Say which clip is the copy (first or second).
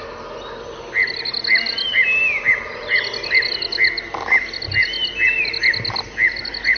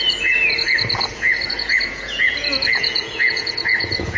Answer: second